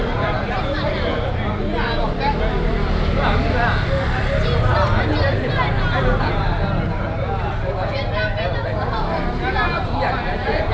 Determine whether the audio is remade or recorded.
recorded